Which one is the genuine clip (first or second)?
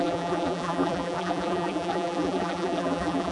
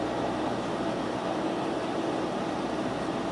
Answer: second